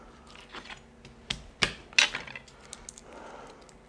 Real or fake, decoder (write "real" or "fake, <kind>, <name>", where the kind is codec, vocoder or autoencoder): real